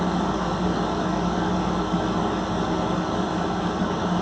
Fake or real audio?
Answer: fake